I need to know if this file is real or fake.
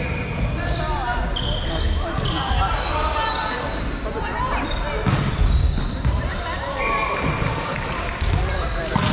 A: real